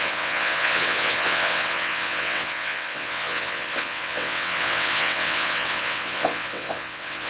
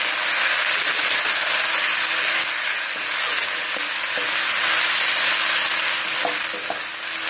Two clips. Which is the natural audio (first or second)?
second